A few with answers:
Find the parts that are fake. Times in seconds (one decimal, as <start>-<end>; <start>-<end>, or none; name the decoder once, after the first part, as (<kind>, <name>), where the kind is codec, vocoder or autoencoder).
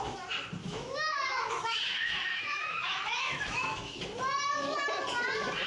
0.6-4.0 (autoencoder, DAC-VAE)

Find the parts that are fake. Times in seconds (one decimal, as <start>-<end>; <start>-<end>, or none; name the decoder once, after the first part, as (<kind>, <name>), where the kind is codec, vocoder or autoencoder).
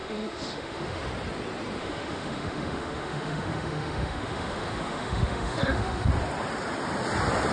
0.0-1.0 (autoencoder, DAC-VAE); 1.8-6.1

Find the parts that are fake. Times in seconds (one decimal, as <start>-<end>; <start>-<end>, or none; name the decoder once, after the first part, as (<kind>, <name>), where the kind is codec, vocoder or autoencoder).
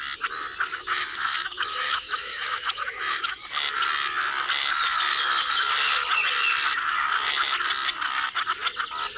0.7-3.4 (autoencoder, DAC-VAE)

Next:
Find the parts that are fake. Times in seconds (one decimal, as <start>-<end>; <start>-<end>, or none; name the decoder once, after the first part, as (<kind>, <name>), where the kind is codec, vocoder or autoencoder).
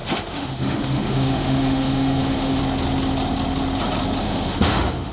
0.0-2.6 (autoencoder, DAC-VAE); 4.2-5.1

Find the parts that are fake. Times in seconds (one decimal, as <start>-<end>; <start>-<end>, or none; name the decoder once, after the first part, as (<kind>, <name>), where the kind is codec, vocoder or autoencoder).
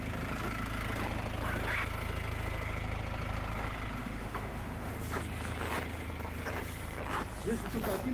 4.0-4.9 (autoencoder, DAC-VAE)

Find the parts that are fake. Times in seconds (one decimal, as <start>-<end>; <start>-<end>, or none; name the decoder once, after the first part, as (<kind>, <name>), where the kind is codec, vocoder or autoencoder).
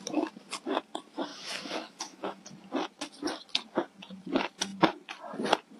1.3-2.4 (autoencoder, DAC-VAE)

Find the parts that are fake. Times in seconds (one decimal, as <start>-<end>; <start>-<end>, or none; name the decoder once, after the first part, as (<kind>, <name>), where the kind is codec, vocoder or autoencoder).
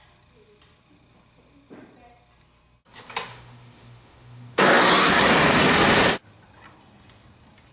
3.3-4.6 (autoencoder, DAC-VAE)